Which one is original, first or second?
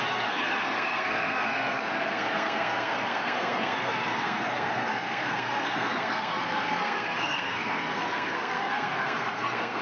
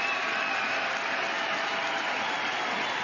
second